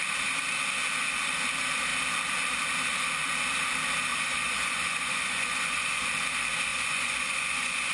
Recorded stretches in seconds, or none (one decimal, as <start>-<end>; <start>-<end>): 0.0-4.1; 6.0-6.7